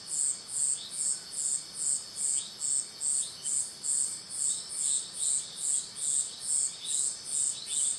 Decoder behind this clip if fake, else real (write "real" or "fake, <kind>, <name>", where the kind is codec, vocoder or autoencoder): real